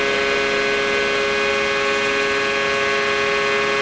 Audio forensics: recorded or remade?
recorded